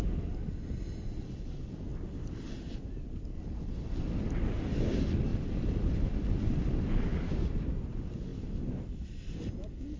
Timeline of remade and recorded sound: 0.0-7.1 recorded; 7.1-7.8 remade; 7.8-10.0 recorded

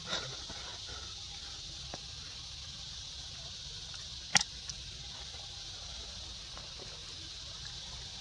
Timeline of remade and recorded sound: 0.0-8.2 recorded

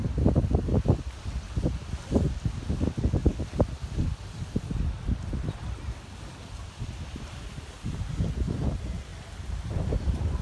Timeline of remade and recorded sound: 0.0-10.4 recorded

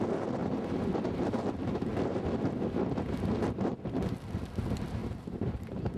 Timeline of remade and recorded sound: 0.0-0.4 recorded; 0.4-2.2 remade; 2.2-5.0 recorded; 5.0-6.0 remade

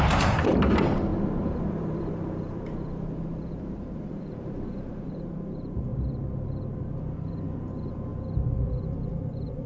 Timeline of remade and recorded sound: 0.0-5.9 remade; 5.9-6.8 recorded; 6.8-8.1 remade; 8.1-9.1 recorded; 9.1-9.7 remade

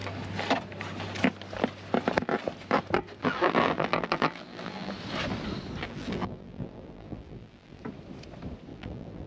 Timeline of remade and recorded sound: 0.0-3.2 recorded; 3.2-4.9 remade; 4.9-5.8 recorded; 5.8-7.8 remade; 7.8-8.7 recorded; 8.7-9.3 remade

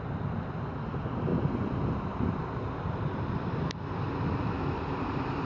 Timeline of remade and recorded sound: 0.0-1.3 remade; 1.3-2.1 recorded; 2.1-5.4 remade

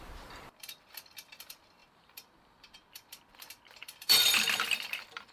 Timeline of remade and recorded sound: 0.0-5.3 remade